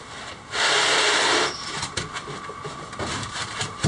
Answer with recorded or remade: recorded